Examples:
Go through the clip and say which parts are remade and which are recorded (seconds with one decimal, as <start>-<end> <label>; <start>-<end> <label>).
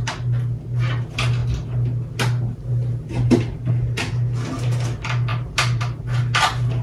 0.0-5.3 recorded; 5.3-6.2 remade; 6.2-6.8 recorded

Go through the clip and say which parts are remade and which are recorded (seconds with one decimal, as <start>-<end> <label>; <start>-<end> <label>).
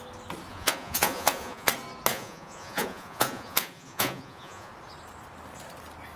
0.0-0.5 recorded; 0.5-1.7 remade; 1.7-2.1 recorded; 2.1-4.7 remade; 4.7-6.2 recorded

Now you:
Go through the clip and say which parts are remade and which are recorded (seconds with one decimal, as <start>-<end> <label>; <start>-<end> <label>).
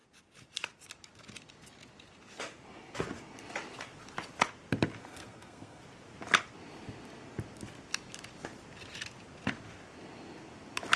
0.0-5.0 recorded; 5.0-5.8 remade; 5.8-11.0 recorded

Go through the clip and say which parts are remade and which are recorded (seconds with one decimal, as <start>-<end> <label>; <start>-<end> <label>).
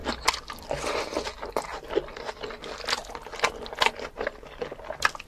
0.0-5.3 recorded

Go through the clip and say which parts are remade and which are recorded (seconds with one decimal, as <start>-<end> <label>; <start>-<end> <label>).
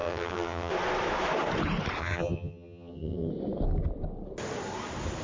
0.0-0.7 remade; 0.7-2.0 recorded; 2.0-3.3 remade; 3.3-5.2 recorded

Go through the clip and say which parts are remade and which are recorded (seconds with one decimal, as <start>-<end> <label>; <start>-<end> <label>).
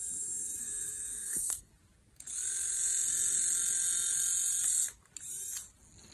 0.0-0.6 recorded; 0.6-1.7 remade; 1.7-6.1 recorded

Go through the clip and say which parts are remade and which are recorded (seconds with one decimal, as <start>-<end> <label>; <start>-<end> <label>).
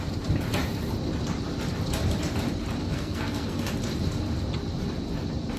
0.0-2.8 recorded; 2.8-3.7 remade; 3.7-5.6 recorded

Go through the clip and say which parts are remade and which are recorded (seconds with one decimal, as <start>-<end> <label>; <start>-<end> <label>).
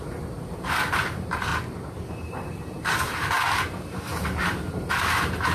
0.0-1.5 remade; 1.5-2.1 recorded; 2.1-5.5 remade